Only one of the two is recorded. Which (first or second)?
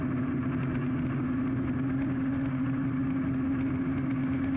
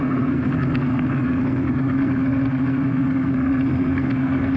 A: first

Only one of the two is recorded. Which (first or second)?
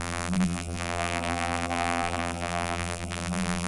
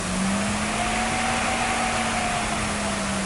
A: second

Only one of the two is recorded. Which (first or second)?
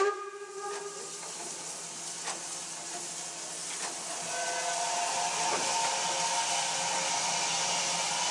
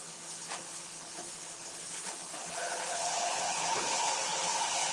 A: first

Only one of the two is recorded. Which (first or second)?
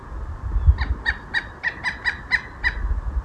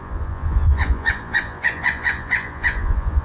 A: first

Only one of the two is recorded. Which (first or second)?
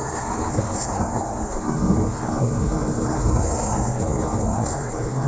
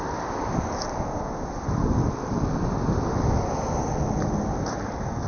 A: second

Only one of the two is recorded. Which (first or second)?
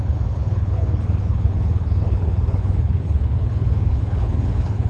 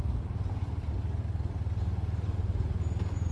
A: second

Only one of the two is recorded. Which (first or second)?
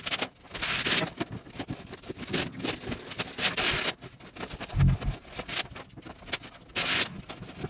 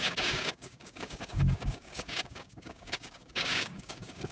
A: first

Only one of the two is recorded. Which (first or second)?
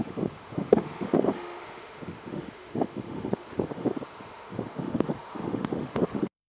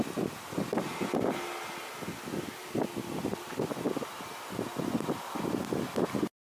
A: second